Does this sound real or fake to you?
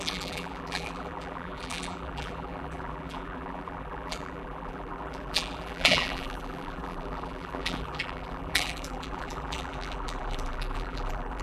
fake